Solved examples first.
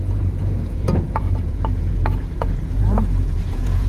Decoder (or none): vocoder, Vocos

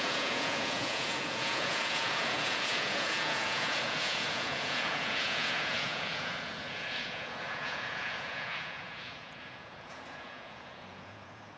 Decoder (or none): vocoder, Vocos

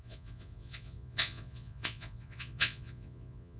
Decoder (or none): vocoder, Vocos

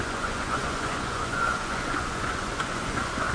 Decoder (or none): vocoder, Vocos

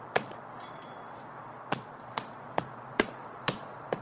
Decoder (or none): vocoder, Vocos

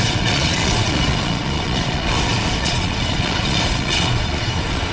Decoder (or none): vocoder, Vocos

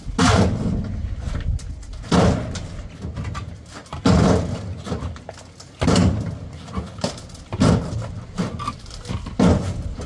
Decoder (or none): none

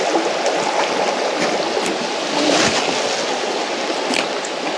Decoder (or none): none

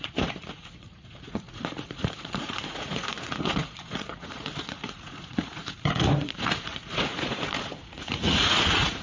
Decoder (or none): vocoder, Vocos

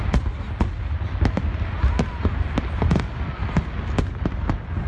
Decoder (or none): none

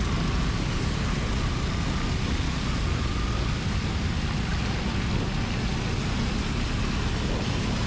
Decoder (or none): none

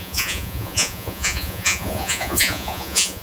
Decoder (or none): vocoder, Vocos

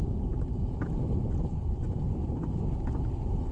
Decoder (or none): none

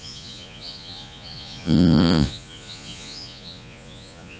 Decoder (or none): vocoder, Vocos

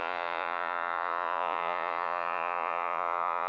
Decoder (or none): vocoder, Vocos